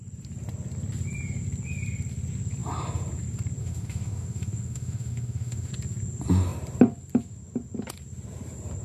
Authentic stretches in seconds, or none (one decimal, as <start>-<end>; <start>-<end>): 0.0-3.6; 5.7-8.8